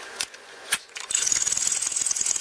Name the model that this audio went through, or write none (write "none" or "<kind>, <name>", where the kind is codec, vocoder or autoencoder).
vocoder, Vocos